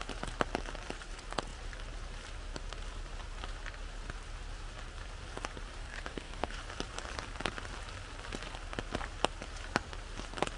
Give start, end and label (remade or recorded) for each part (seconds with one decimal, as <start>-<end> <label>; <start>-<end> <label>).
0.0-5.8 recorded; 5.8-6.6 remade; 6.6-10.6 recorded